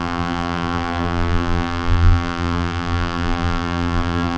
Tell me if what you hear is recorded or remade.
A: remade